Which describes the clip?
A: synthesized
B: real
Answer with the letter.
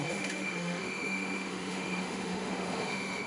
A